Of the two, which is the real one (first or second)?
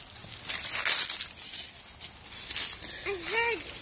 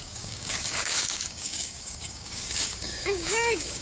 first